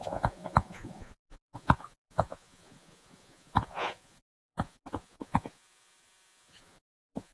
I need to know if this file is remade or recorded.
remade